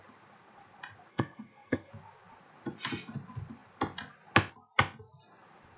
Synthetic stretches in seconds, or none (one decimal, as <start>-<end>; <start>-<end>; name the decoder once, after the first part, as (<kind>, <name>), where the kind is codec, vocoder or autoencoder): 1.1-1.9 (codec, SNAC)